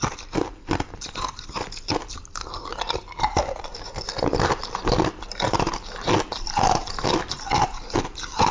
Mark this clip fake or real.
real